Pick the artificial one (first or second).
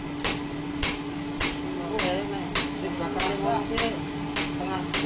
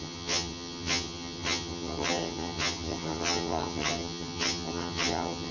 second